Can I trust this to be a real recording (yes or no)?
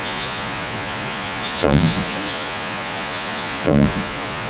no